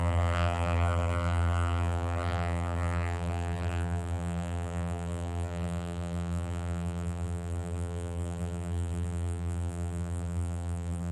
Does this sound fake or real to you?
fake